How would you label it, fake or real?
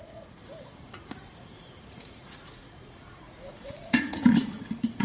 fake